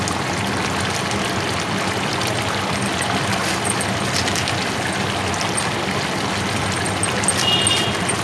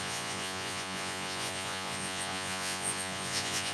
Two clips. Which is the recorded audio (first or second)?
first